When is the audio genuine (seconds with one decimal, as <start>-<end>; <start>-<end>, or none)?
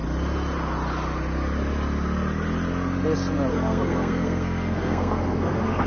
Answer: 0.0-3.5